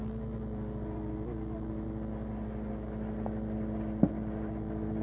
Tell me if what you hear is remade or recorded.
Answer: recorded